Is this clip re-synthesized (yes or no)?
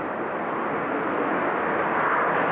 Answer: no